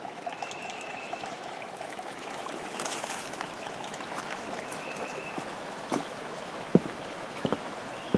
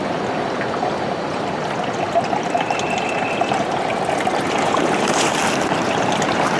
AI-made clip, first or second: first